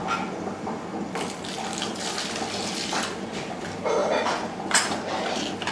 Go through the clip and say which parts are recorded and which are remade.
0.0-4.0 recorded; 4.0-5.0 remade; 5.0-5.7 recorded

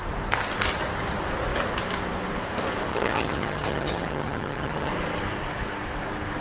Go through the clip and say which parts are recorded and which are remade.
0.0-2.9 recorded; 2.9-4.9 remade; 4.9-6.4 recorded

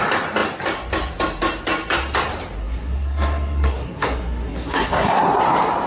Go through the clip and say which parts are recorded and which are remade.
0.0-2.6 recorded; 2.6-5.4 remade; 5.4-5.9 recorded